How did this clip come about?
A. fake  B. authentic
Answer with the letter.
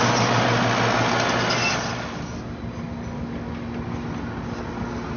B